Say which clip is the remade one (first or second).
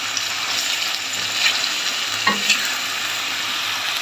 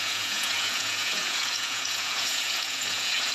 second